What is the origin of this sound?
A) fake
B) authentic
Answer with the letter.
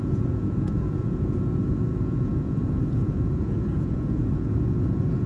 A